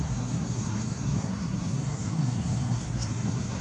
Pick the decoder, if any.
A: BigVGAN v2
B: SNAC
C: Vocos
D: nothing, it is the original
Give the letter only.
B